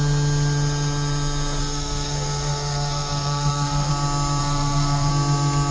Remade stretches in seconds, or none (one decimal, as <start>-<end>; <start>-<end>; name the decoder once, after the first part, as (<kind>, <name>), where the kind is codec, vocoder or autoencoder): 1.6-3.9 (codec, SNAC); 4.4-5.1